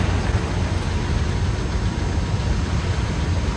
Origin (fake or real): real